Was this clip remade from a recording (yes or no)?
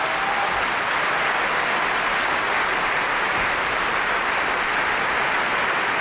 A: no